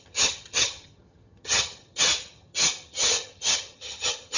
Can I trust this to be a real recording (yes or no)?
no